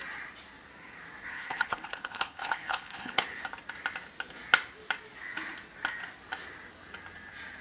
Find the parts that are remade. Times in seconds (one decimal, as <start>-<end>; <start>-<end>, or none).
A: 1.3-3.2